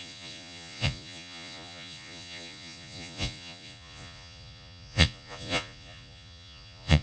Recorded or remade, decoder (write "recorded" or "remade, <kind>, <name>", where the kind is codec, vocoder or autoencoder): remade, vocoder, Vocos